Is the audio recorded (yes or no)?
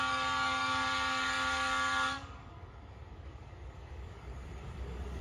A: no